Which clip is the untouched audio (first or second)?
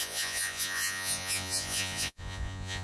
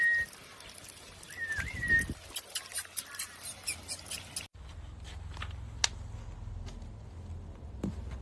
second